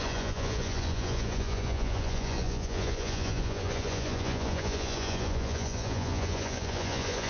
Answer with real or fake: fake